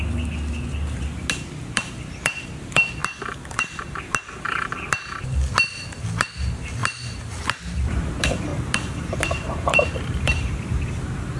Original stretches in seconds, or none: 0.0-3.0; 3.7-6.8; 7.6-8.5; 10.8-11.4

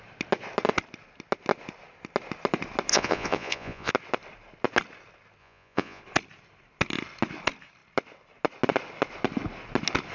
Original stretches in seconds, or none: 0.0-2.9; 3.9-5.4; 6.0-10.1